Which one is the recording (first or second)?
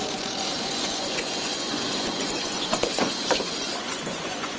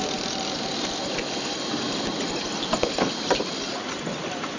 second